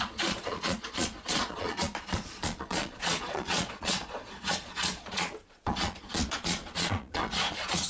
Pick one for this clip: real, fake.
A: fake